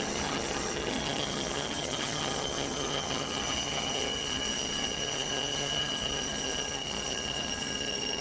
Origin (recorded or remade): remade